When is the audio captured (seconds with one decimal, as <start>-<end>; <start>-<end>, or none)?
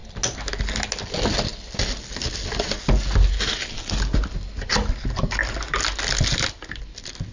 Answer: 0.0-7.3